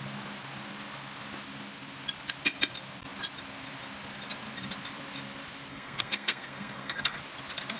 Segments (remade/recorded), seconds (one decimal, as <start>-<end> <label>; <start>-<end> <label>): 0.0-5.7 recorded; 5.7-7.2 remade; 7.2-7.8 recorded